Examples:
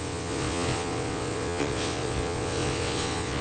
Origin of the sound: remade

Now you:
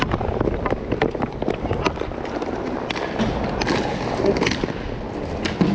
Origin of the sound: recorded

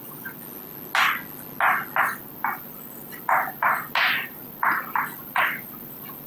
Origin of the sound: recorded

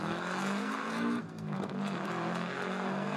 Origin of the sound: remade